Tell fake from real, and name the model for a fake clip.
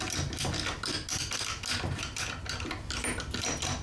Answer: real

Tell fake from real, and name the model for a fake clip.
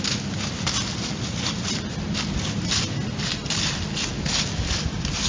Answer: real